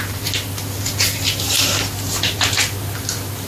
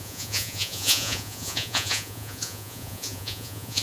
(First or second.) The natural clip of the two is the first